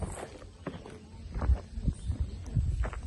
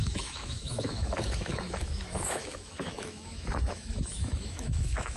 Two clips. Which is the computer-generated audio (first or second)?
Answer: second